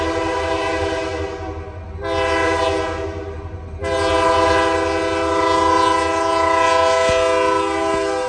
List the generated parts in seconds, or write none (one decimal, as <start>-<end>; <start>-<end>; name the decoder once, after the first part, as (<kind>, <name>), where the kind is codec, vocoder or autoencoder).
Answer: none